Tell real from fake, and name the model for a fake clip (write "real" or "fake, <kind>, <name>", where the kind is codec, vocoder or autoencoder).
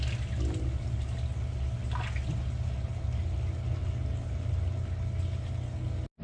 real